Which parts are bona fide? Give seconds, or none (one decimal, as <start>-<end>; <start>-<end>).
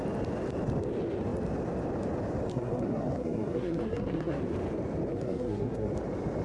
0.0-2.5; 4.4-5.1; 5.9-6.4